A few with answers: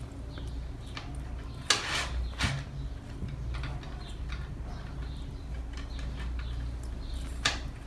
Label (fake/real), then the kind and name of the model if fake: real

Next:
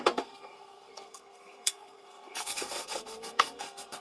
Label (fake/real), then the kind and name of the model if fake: fake, codec, SNAC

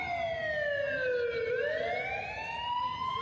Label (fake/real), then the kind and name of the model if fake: real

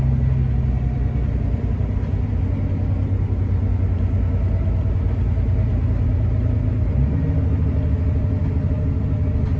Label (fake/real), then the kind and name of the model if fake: real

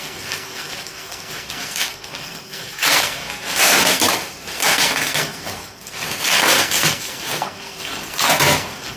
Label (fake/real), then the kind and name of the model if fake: fake, codec, SNAC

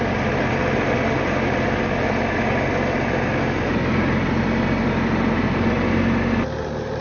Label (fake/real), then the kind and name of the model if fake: real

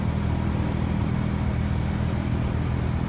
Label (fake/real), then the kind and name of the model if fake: real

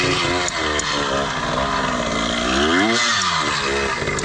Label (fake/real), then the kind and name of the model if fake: real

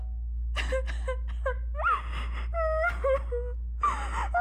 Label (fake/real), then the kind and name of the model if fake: real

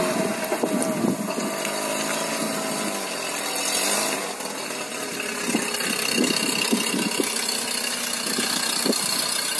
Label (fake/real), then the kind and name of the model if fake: real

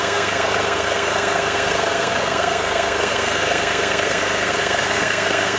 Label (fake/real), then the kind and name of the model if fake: fake, codec, SNAC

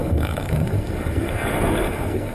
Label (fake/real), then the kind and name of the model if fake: fake, codec, SNAC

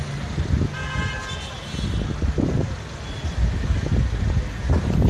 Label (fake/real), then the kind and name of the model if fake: real